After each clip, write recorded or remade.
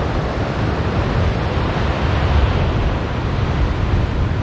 recorded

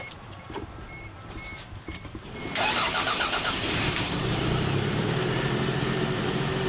remade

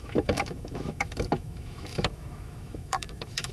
remade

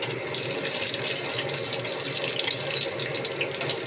recorded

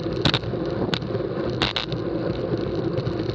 recorded